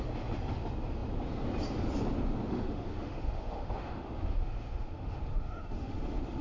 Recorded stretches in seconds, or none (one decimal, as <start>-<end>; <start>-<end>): 0.0-2.5